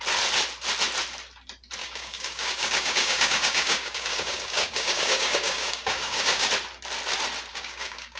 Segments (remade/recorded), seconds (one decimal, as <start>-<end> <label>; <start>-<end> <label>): 0.0-1.8 recorded; 1.8-6.5 remade; 6.5-7.5 recorded; 7.5-8.2 remade